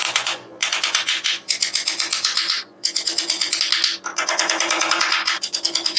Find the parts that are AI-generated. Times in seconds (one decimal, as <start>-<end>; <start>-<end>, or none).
0.0-3.6; 4.1-6.0